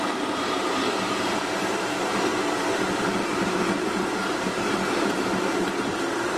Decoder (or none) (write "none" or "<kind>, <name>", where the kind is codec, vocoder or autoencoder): vocoder, BigVGAN v2